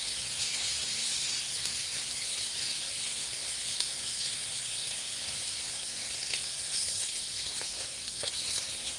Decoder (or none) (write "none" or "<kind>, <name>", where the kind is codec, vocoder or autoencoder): codec, SNAC